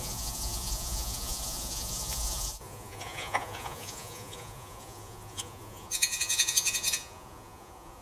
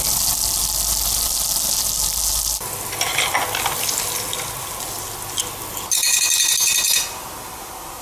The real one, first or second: second